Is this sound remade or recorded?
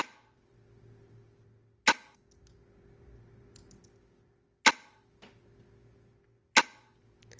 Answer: recorded